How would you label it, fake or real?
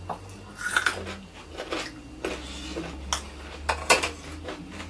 real